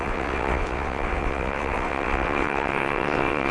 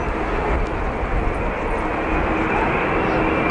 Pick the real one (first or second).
second